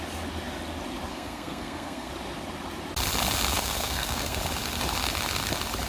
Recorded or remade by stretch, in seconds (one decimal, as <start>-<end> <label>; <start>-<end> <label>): 0.0-1.1 recorded; 1.1-2.1 remade; 2.1-3.5 recorded; 3.5-4.4 remade; 4.4-5.9 recorded